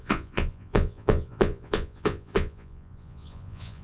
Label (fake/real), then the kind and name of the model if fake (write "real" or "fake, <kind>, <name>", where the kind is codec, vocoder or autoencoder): fake, vocoder, Vocos